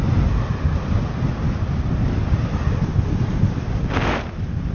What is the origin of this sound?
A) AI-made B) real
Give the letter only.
B